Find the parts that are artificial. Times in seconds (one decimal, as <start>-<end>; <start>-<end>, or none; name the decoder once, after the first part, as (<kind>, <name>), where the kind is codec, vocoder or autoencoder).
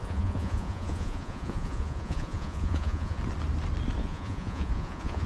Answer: 0.0-3.2 (vocoder, Vocos); 4.0-5.3